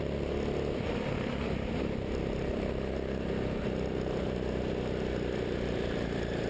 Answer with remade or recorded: recorded